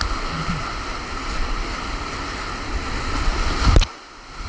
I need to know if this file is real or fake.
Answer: real